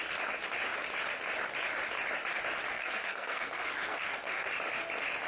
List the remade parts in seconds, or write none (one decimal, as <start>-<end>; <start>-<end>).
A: 2.7-4.5